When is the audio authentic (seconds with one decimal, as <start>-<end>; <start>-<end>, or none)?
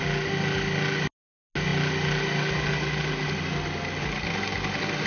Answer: 0.0-5.1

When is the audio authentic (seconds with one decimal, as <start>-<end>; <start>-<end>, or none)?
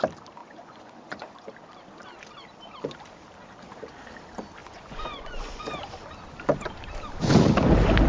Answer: 0.0-0.4; 1.5-4.6; 5.8-8.1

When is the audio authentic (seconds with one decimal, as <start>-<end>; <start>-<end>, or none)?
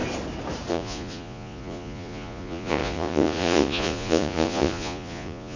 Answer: 0.0-0.7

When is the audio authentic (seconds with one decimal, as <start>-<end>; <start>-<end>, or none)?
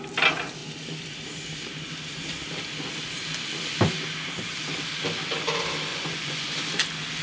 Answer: 0.0-5.9; 6.5-7.2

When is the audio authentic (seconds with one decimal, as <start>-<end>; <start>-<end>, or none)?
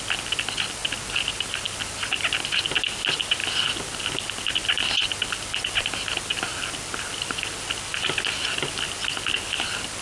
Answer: 0.0-10.0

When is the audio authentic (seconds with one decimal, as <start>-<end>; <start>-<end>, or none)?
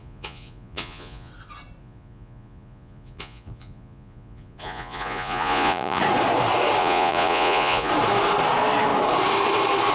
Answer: 1.3-1.8; 6.0-6.8; 7.9-9.9